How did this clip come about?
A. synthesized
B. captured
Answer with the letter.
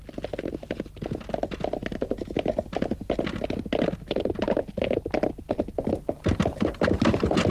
B